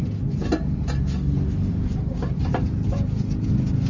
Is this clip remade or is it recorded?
recorded